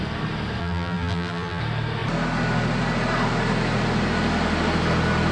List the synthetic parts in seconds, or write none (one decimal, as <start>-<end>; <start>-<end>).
0.6-1.6